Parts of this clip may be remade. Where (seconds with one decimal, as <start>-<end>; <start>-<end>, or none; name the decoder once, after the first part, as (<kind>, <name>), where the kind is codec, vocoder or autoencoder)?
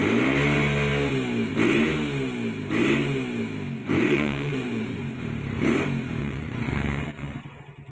3.8-5.1 (vocoder, Vocos); 6.2-7.4